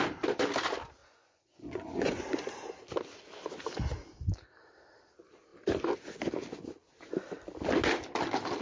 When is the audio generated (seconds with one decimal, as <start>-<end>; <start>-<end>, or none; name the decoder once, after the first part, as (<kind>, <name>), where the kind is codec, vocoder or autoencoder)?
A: 1.0-2.4 (vocoder, Vocos)

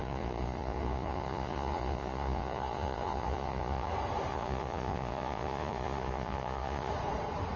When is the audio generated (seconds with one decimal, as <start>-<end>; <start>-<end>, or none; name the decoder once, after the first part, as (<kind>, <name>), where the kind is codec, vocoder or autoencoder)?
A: 0.0-3.9 (vocoder, Vocos); 4.3-6.9